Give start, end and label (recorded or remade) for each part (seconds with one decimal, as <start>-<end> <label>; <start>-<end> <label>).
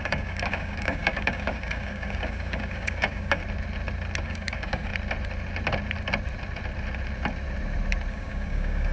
0.0-3.4 remade; 3.4-4.2 recorded; 4.2-4.9 remade; 4.9-8.1 recorded; 8.1-8.9 remade